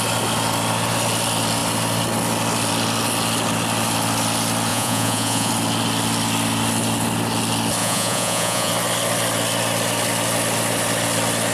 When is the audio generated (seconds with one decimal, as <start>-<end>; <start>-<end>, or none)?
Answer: 4.7-5.5; 7.8-8.7